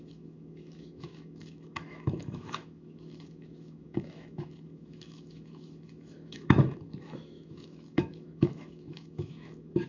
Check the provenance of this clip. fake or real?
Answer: fake